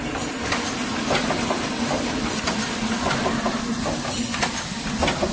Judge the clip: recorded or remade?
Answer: recorded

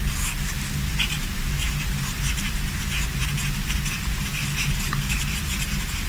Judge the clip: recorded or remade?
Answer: remade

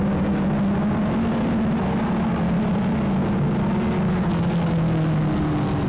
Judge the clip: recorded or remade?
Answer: recorded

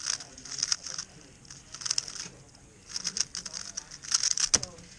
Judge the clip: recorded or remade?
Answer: recorded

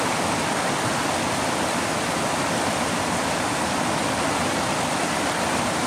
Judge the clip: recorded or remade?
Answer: recorded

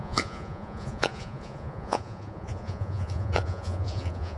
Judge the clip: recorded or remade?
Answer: remade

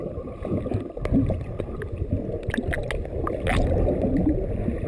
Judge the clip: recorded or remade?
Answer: recorded